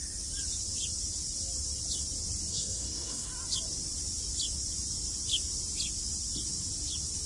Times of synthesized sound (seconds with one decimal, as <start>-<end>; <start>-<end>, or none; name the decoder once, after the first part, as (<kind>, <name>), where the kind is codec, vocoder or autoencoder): 2.5-3.3 (codec, SNAC)